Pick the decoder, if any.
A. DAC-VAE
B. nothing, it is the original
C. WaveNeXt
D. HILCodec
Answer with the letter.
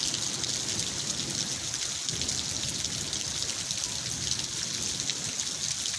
B